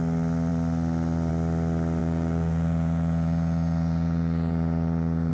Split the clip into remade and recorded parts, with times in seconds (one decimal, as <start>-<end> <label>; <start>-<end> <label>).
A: 0.0-2.0 recorded; 2.0-5.3 remade